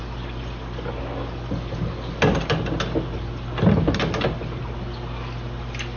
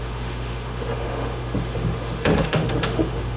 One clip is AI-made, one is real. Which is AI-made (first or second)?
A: second